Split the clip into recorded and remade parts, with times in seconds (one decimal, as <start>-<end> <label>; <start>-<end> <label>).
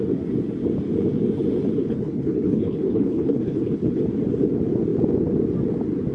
0.0-1.8 recorded; 1.8-4.0 remade; 4.0-6.1 recorded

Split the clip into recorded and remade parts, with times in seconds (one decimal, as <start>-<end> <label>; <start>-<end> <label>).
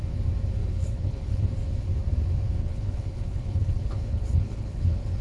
0.0-0.6 recorded; 0.6-1.5 remade; 1.5-2.6 recorded; 2.6-5.2 remade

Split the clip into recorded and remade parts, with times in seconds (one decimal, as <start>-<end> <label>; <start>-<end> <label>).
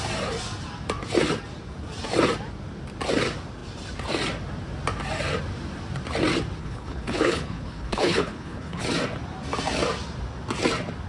0.0-6.6 recorded; 6.6-8.8 remade; 8.8-11.1 recorded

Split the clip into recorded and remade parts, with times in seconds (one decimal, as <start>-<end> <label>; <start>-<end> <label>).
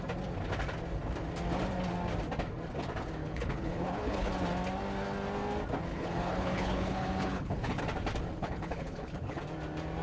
0.0-3.2 recorded; 3.2-4.3 remade; 4.3-5.9 recorded; 5.9-7.8 remade; 7.8-8.4 recorded; 8.4-9.4 remade; 9.4-10.0 recorded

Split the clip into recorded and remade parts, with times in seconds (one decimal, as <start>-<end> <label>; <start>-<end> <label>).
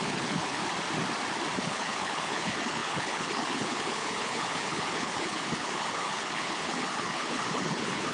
0.0-0.6 remade; 0.6-1.6 recorded; 1.6-8.1 remade